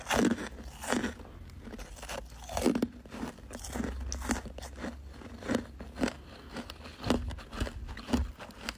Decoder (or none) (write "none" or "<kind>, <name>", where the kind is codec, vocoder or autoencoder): none